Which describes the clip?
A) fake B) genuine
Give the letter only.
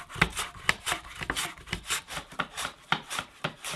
B